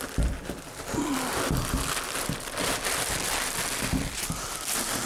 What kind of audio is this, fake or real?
real